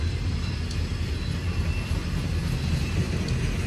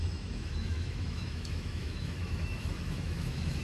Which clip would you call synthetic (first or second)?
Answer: second